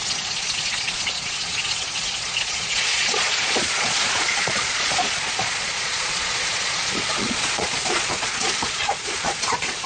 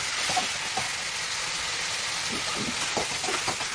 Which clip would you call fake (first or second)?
first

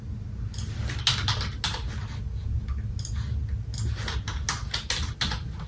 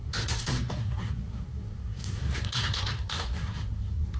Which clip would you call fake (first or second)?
second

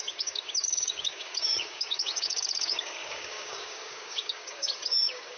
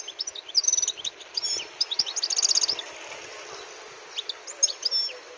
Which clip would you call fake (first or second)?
first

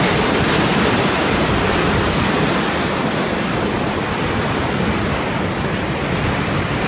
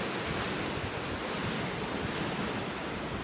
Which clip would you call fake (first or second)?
first